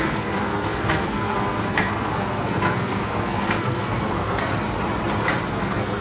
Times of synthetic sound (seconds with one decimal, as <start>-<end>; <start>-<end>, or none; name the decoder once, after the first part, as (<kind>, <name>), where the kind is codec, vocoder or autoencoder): 0.0-4.5 (codec, SNAC); 5.5-6.0